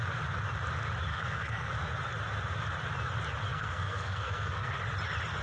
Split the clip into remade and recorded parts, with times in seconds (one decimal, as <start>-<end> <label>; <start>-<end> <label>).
0.0-1.1 recorded; 1.1-1.7 remade; 1.7-3.5 recorded; 3.5-4.8 remade; 4.8-5.4 recorded